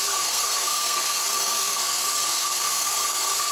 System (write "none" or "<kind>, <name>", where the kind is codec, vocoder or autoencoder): codec, SNAC